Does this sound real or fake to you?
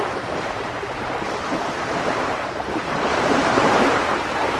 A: fake